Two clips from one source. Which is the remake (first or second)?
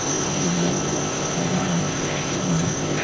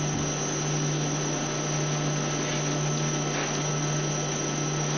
first